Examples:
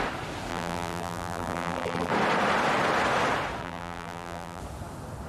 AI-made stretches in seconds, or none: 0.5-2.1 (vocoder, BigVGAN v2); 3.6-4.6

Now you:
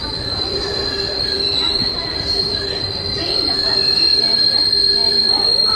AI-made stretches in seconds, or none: 0.0-3.5 (vocoder, BigVGAN v2); 5.0-5.8

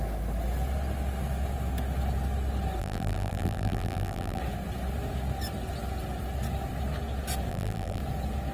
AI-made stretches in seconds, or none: 2.8-4.4 (vocoder, BigVGAN v2); 7.5-8.0

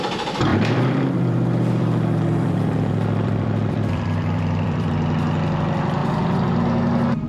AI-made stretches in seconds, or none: 0.5-4.9 (vocoder, BigVGAN v2); 6.0-6.6

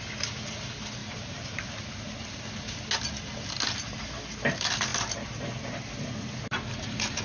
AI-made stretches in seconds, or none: 1.0-2.4 (vocoder, BigVGAN v2)

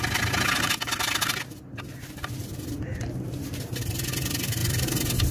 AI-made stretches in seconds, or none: none